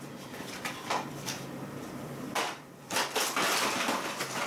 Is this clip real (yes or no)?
no